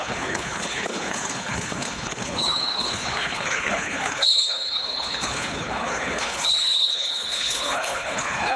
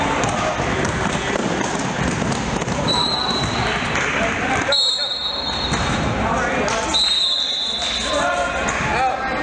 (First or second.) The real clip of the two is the second